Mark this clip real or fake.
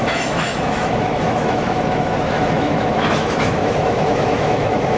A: fake